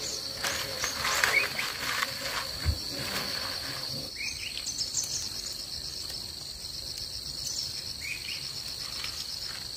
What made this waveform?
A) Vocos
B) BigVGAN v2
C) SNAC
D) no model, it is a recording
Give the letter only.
D